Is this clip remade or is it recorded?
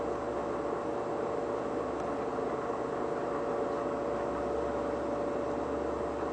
recorded